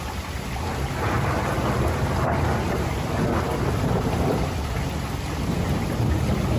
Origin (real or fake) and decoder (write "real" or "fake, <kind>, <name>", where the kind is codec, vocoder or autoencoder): real